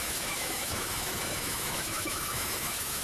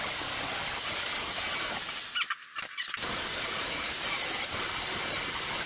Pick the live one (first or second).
second